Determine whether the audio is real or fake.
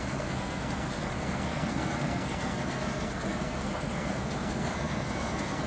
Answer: fake